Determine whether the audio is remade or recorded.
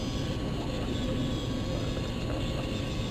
recorded